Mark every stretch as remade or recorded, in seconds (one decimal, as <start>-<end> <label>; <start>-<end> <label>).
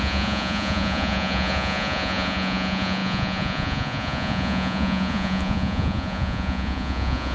0.0-7.3 remade